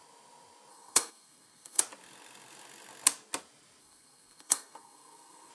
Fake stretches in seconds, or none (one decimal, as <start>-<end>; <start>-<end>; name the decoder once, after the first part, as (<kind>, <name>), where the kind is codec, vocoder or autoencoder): 0.7-1.8 (codec, SNAC); 3.8-5.5